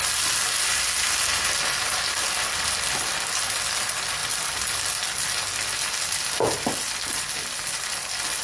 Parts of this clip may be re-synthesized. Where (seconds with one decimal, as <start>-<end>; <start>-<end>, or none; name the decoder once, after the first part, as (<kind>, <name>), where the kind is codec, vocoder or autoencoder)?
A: none